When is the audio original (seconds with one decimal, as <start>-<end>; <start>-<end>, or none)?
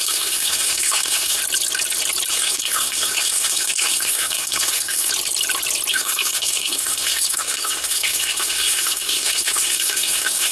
1.4-2.3; 5.1-5.9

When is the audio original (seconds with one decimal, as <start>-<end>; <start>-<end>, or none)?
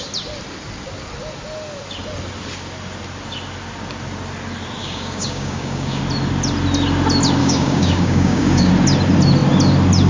0.0-4.8; 6.0-7.4; 8.7-10.1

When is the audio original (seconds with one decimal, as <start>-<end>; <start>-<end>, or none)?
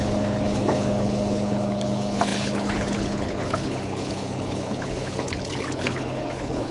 none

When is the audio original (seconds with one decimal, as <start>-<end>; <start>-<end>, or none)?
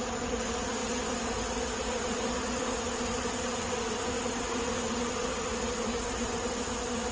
0.0-0.8; 4.6-7.1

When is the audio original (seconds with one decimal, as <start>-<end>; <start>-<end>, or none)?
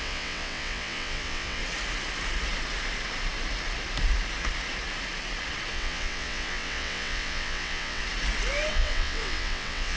1.6-5.7; 8.0-8.7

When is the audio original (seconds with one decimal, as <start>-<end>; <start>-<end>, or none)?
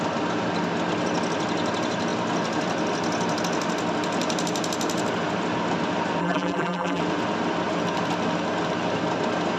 0.0-6.2; 7.0-9.6